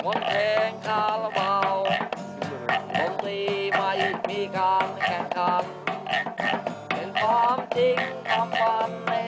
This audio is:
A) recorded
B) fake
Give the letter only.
A